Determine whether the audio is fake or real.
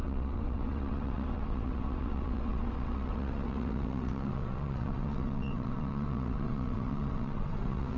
fake